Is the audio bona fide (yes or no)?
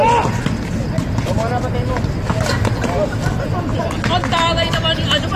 yes